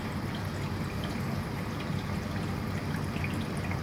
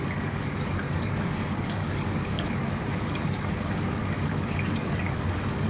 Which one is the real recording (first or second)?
first